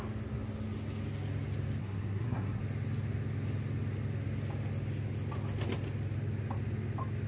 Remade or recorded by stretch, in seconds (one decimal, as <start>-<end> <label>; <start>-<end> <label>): 0.0-1.8 recorded; 1.8-2.6 remade; 2.6-7.3 recorded